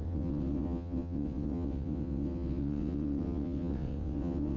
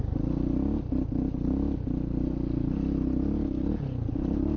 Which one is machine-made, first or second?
first